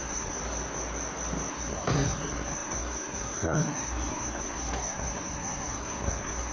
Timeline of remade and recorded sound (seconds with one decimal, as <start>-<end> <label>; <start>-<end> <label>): 0.0-0.4 remade; 0.4-1.5 recorded; 1.5-6.5 remade